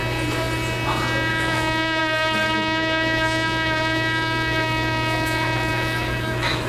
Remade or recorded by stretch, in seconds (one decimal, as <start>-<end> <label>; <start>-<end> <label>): 0.0-1.3 recorded; 1.3-6.7 remade